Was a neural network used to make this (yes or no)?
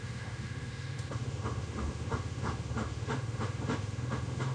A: yes